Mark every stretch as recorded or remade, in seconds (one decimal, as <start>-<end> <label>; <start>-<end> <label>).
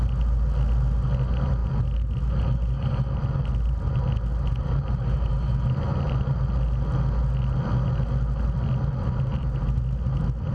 0.0-4.6 recorded; 4.6-5.5 remade; 5.5-9.3 recorded; 9.3-9.8 remade; 9.8-10.5 recorded